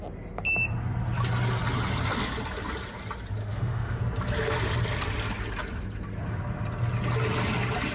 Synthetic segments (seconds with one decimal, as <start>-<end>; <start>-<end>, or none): 3.4-4.0